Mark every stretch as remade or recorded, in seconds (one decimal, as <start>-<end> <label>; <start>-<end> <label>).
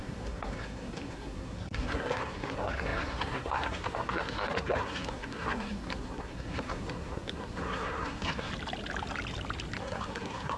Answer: 0.0-8.5 remade; 8.5-9.8 recorded; 9.8-10.6 remade